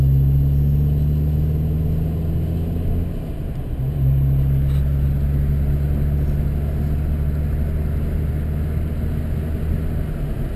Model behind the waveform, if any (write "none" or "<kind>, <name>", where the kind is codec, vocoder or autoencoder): none